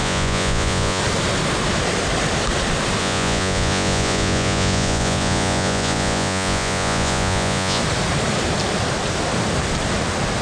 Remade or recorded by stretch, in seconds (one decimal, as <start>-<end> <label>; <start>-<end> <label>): 0.0-1.0 remade; 1.0-3.0 recorded; 3.0-7.8 remade; 7.8-10.4 recorded